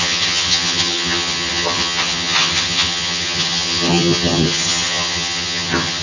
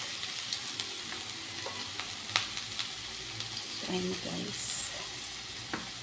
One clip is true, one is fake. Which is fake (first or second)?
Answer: first